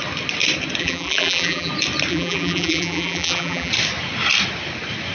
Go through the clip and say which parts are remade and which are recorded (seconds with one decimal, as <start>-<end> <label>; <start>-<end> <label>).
0.0-0.8 recorded; 0.8-1.7 remade; 1.7-2.1 recorded; 2.1-3.7 remade; 3.7-5.1 recorded

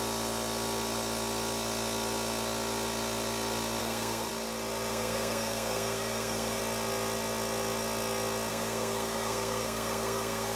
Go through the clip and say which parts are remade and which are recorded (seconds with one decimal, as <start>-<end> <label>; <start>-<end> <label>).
0.0-3.8 recorded; 3.8-4.3 remade; 4.3-4.9 recorded; 4.9-6.6 remade; 6.6-8.5 recorded; 8.5-10.6 remade

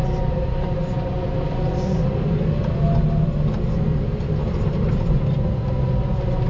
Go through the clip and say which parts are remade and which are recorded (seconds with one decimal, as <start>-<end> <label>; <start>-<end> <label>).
0.0-6.5 recorded